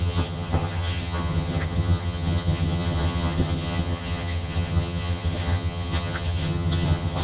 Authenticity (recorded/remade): remade